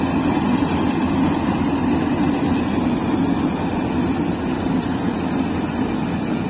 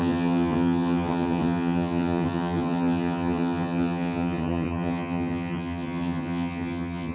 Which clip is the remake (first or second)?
second